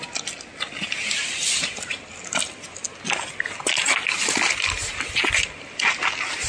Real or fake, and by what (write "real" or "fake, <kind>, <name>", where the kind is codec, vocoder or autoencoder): real